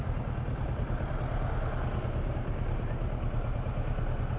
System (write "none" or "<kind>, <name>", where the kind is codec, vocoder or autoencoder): none